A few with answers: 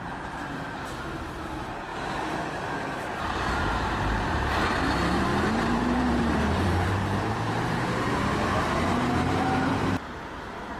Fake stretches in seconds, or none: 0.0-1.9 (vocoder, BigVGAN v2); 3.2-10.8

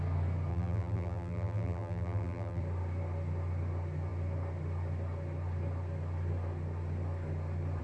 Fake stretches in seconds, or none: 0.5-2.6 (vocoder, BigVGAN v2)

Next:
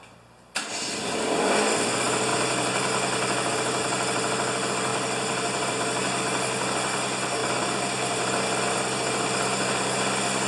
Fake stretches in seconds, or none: 2.3-3.8 (vocoder, BigVGAN v2); 4.9-6.2